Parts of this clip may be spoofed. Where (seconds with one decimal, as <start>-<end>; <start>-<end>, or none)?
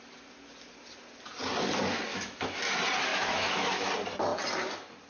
2.1-2.6; 3.1-3.9